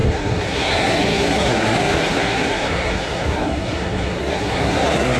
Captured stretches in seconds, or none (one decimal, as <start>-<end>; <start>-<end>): none